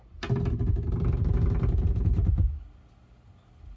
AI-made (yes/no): no